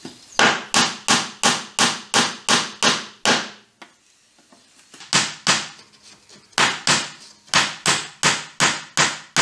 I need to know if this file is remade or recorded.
recorded